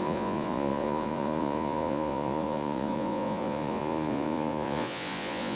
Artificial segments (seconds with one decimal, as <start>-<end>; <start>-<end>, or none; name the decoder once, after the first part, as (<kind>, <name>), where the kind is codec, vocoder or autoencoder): 0.0-5.6 (vocoder, Vocos)